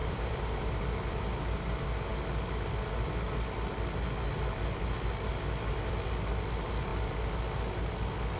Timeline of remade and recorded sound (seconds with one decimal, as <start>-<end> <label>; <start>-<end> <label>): 0.0-1.2 remade; 1.2-8.4 recorded